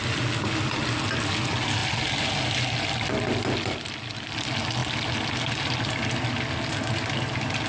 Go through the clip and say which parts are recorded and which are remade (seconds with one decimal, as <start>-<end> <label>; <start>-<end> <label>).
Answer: 0.0-7.7 recorded